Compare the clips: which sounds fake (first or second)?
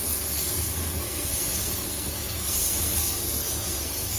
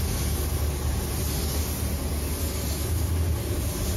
first